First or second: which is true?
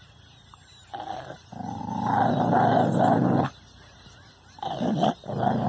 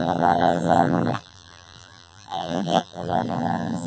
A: first